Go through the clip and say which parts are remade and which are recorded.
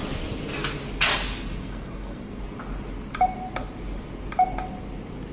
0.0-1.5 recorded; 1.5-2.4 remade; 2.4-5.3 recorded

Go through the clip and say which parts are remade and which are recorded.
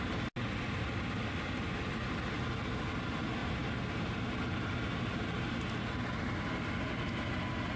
0.0-7.8 recorded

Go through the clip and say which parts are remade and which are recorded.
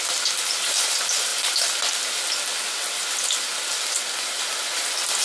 0.0-5.2 recorded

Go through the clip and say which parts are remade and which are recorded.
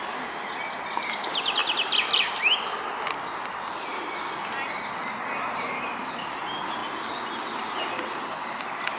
0.0-1.6 recorded; 1.6-2.4 remade; 2.4-9.0 recorded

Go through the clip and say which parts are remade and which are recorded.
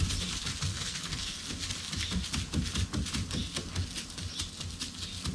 0.0-0.7 recorded; 0.7-1.4 remade; 1.4-5.3 recorded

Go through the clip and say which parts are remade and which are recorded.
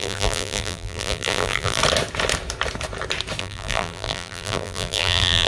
0.0-1.8 remade; 1.8-3.4 recorded; 3.4-5.5 remade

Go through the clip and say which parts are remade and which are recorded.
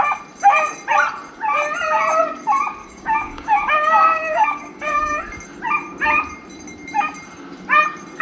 0.0-2.8 recorded; 2.8-5.2 remade; 5.2-8.2 recorded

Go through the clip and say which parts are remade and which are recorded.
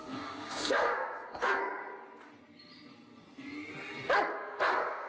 0.0-1.6 remade; 1.6-4.3 recorded; 4.3-5.1 remade